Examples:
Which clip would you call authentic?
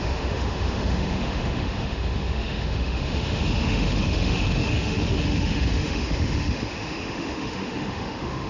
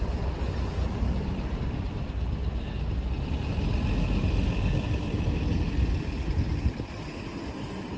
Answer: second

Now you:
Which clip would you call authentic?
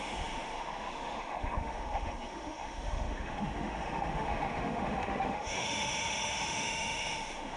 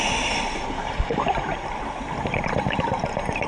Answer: second